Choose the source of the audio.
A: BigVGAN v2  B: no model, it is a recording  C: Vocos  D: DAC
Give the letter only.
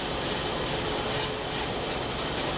B